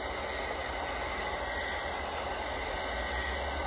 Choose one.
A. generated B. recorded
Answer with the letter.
B